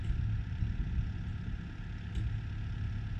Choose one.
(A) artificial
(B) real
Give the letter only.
B